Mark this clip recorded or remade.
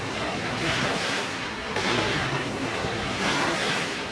remade